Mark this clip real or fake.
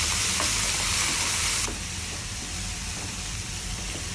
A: fake